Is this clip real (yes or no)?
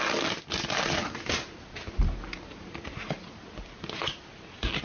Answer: yes